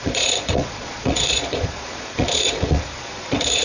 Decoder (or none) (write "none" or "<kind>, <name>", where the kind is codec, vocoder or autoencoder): vocoder, Vocos